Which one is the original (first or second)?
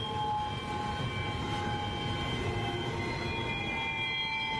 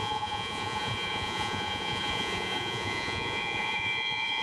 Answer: first